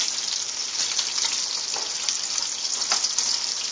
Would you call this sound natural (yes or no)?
yes